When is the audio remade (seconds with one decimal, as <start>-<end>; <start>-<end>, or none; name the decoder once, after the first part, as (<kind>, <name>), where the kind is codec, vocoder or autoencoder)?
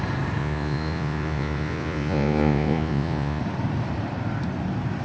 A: 0.4-3.4 (vocoder, Vocos)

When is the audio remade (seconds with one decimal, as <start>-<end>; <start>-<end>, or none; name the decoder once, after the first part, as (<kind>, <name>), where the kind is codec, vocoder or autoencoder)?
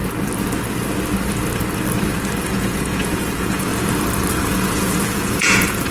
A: 2.4-3.7 (vocoder, Vocos); 4.3-5.9